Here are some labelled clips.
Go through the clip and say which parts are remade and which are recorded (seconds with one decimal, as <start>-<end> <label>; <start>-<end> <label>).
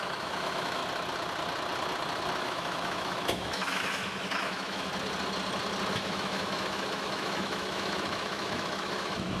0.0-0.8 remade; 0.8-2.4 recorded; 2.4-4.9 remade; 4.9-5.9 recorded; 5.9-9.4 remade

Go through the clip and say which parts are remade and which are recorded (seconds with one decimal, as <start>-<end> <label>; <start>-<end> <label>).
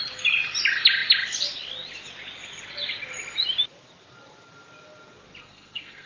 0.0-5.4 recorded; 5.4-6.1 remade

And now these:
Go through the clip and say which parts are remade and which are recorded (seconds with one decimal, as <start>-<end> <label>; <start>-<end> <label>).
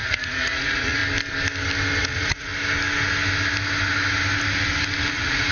0.0-1.0 remade; 1.0-2.0 recorded; 2.0-2.5 remade; 2.5-5.1 recorded; 5.1-5.5 remade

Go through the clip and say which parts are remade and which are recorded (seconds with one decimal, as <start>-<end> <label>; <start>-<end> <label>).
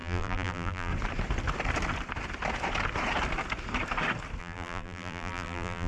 0.0-0.9 remade; 0.9-4.4 recorded; 4.4-5.9 remade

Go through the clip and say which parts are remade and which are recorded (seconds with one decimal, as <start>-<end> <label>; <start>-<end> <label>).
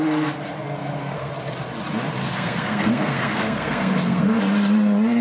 0.0-0.8 recorded; 0.8-1.3 remade; 1.3-2.2 recorded; 2.2-4.4 remade; 4.4-5.2 recorded